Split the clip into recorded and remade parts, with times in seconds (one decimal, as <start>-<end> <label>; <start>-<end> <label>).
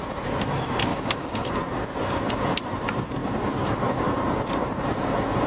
0.0-0.9 recorded; 0.9-1.5 remade; 1.5-5.5 recorded